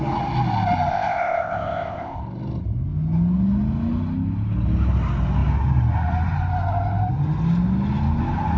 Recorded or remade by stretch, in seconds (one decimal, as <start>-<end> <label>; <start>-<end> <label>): 0.0-0.9 recorded; 0.9-2.2 remade; 2.2-8.6 recorded